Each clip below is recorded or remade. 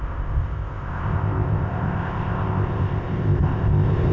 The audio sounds remade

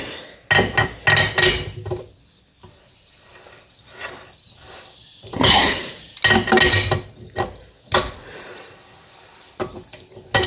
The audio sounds recorded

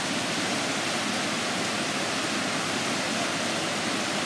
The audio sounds recorded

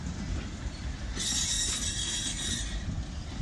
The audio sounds recorded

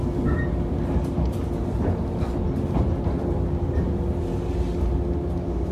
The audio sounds recorded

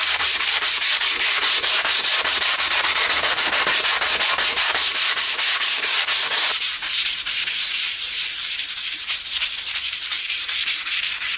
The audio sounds remade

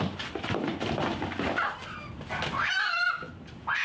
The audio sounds recorded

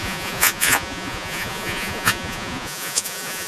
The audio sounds remade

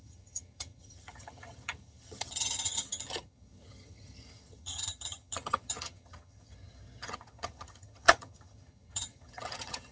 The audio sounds remade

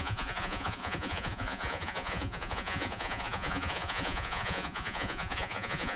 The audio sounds remade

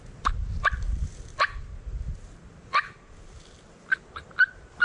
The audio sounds recorded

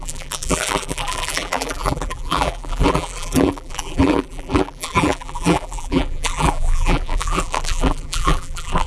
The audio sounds remade